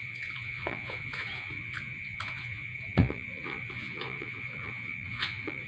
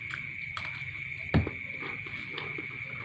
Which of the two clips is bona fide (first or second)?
second